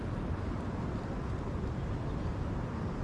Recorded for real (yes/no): yes